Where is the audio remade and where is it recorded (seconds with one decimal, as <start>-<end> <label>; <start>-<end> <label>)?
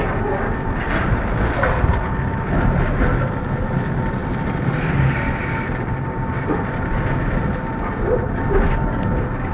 0.0-9.5 recorded